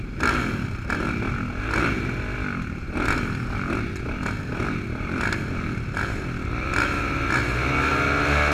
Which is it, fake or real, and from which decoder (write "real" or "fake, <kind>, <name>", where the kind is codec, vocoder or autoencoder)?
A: real